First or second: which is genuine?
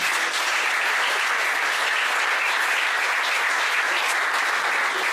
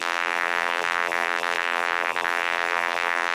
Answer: first